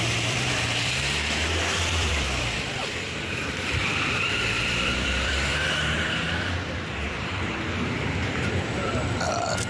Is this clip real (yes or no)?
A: no